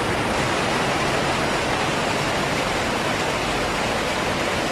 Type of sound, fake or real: real